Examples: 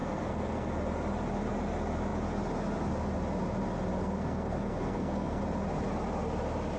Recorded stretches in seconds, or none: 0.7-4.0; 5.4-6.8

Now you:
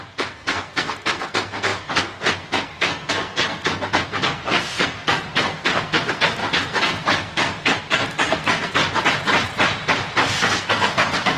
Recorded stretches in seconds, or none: 8.8-10.4

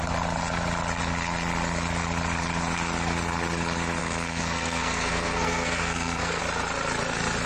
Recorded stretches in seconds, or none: 0.0-4.0; 6.4-7.5

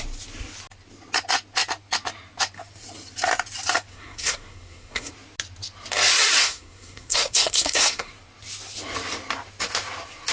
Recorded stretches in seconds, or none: 0.0-3.9; 5.1-6.4; 8.1-10.3

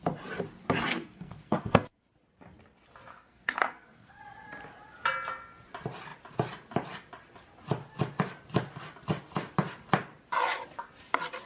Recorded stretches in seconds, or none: 0.0-0.9; 2.1-3.1; 4.2-11.5

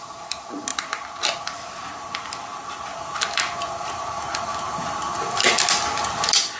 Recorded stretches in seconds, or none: 0.0-6.6

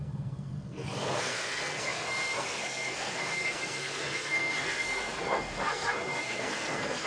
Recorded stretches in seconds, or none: none

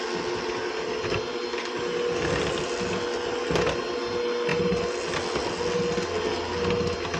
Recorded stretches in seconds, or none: 0.0-7.2